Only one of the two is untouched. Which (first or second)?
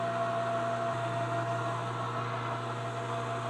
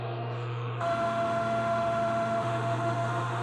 first